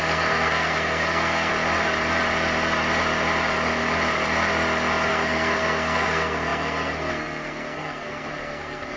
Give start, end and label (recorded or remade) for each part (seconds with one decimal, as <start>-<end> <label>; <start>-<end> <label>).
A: 0.0-1.5 remade; 1.5-5.1 recorded; 5.1-9.0 remade